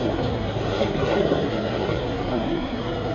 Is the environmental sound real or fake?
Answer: fake